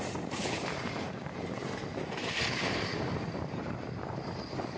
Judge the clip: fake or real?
fake